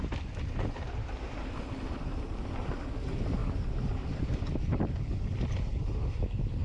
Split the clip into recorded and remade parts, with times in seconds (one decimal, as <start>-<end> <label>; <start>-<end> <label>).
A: 0.0-3.4 recorded; 3.4-4.9 remade; 4.9-6.6 recorded